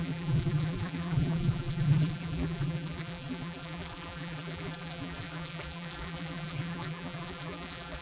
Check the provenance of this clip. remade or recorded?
remade